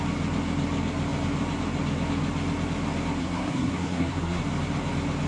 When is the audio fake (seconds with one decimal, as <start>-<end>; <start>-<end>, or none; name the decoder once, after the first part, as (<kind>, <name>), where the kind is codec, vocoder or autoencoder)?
3.2-4.4 (codec, SNAC)